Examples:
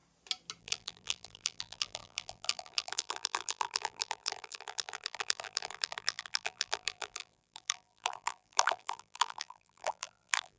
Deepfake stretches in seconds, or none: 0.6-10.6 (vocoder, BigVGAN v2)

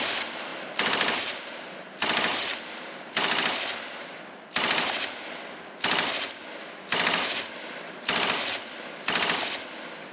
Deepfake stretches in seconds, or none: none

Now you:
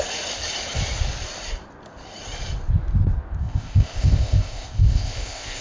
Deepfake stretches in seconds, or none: 3.4-5.6 (codec, ZipCodec)

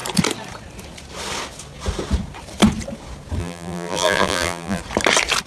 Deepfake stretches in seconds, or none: 3.4-4.8 (vocoder, BigVGAN v2)

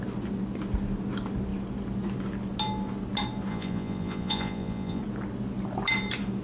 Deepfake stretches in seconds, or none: 3.5-5.0 (vocoder, Vocos)

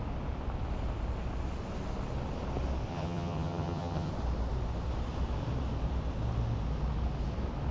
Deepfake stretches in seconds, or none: 2.9-4.1 (vocoder, HiFi-GAN)